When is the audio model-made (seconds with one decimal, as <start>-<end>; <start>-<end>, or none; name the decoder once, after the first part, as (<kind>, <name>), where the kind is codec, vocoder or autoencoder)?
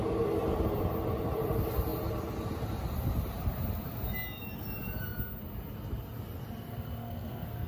6.7-7.7 (codec, SNAC)